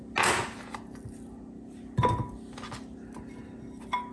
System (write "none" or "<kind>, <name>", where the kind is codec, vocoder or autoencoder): none